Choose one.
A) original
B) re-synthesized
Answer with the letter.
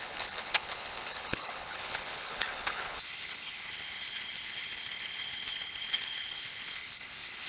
B